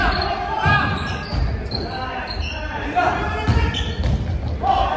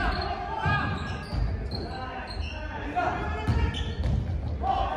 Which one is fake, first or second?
first